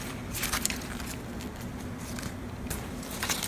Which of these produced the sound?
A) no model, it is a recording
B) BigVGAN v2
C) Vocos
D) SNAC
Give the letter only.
B